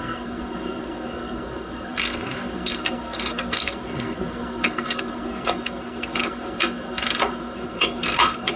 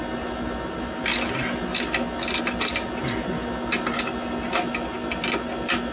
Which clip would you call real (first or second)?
second